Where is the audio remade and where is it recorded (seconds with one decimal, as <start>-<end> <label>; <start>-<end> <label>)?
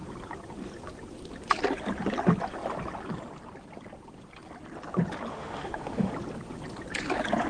0.0-5.3 recorded; 5.3-6.1 remade; 6.1-7.5 recorded